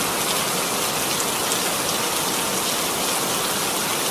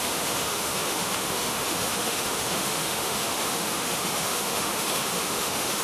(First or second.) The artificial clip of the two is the second